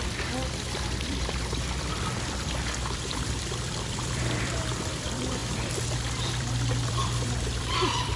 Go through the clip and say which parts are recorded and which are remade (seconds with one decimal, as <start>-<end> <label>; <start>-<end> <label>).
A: 0.0-8.2 remade